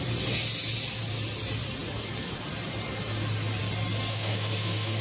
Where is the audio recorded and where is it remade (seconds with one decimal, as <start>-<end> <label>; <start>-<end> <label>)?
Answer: 0.0-4.1 recorded; 4.1-5.0 remade